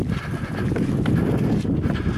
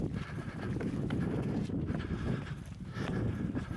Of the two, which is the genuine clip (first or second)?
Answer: first